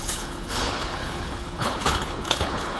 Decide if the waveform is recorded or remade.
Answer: remade